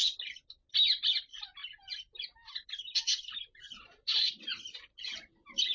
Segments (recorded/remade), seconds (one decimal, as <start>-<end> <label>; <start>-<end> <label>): 0.0-5.7 recorded

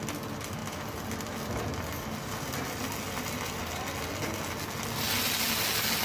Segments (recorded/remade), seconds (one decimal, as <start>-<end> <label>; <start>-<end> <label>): 0.0-6.0 recorded

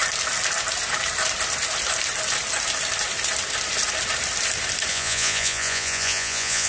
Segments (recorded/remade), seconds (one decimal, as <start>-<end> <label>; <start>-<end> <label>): 0.0-4.9 recorded; 4.9-6.7 remade

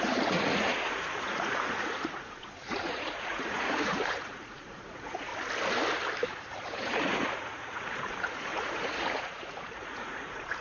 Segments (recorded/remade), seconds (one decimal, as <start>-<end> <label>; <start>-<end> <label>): 0.0-5.3 remade; 5.3-6.3 recorded; 6.3-10.6 remade

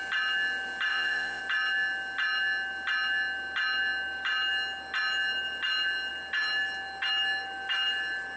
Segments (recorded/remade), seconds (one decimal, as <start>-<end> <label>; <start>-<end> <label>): 0.0-0.9 recorded; 0.9-1.4 remade; 1.4-8.4 recorded

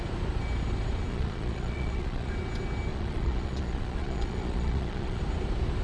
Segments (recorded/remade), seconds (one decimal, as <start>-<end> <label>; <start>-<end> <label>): 0.0-1.1 recorded; 1.1-2.3 remade; 2.3-2.9 recorded; 2.9-5.2 remade; 5.2-5.8 recorded